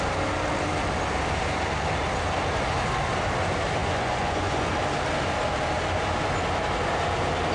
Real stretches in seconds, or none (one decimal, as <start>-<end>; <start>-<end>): 0.0-3.8; 4.7-7.5

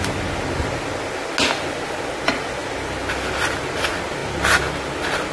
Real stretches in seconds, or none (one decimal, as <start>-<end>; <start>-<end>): 0.0-5.3

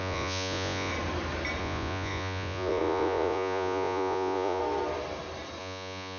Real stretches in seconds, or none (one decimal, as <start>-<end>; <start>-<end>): 0.9-1.6; 4.6-5.6

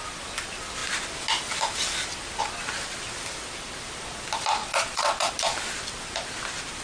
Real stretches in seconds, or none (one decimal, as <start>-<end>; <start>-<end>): 0.0-4.6; 5.3-6.8

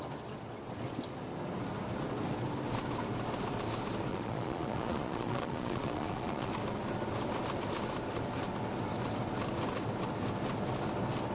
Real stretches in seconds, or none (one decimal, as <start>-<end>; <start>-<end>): 0.0-4.1; 6.5-11.3

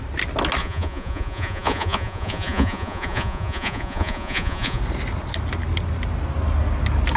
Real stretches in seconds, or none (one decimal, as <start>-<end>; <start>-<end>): 0.0-0.6; 4.8-7.2